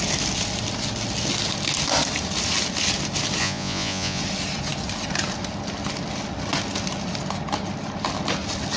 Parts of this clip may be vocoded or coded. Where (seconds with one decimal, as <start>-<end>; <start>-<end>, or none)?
3.4-4.2